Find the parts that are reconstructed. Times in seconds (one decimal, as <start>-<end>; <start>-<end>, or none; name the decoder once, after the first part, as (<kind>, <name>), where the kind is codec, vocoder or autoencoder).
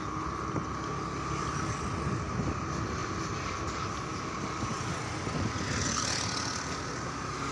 none